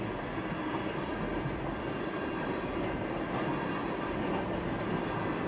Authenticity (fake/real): real